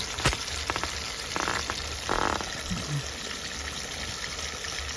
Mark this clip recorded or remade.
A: recorded